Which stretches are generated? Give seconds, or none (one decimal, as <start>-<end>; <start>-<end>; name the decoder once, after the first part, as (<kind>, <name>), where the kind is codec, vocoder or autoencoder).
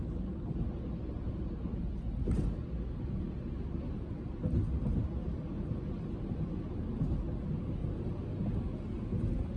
none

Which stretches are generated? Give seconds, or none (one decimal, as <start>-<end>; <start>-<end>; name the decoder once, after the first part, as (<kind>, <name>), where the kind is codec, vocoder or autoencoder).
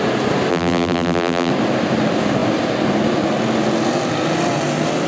0.5-1.5 (vocoder, BigVGAN v2)